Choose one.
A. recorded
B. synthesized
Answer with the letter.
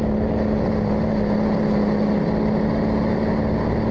A